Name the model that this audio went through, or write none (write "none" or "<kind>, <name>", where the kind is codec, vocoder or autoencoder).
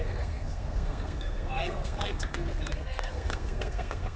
codec, SNAC